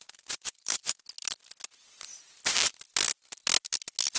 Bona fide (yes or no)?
yes